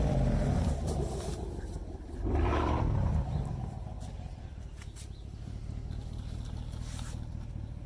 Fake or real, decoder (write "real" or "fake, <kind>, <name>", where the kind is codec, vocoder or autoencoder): fake, vocoder, BigVGAN v2